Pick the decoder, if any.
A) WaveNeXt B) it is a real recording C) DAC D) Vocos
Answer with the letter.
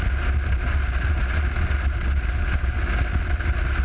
B